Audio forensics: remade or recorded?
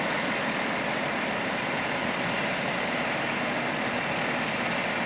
recorded